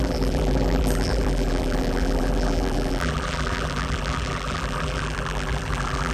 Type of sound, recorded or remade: remade